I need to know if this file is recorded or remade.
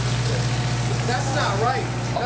recorded